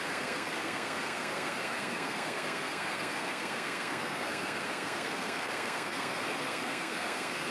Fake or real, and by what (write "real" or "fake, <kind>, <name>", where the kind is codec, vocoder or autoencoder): fake, codec, SNAC